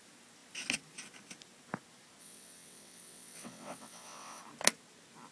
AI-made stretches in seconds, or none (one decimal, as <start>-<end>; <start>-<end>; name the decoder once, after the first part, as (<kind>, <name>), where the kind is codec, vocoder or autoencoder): 2.2-4.4 (vocoder, WaveNeXt)